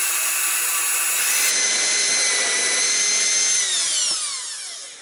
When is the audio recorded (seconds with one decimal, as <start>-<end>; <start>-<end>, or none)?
0.5-5.0